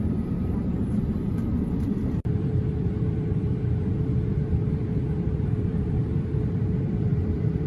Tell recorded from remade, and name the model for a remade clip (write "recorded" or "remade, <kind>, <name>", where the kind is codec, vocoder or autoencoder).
remade, vocoder, BigVGAN v2